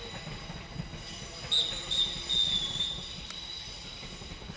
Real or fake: real